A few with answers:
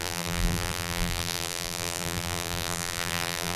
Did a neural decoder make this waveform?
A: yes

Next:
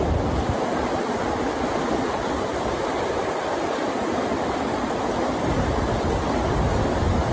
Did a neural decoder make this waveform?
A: no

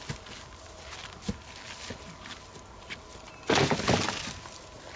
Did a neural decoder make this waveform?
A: no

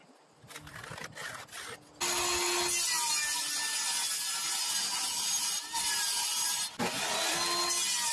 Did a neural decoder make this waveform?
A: no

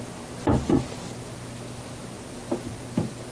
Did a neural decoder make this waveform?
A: no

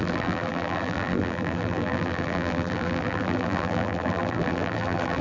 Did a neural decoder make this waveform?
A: yes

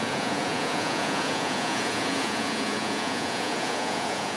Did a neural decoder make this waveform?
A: yes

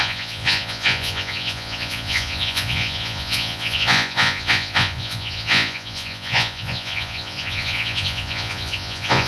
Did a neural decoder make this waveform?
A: yes